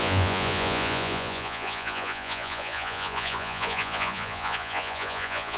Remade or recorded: remade